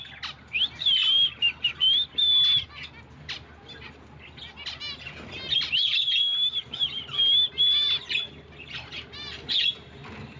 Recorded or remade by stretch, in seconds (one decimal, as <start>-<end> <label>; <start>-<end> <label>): 0.0-10.4 recorded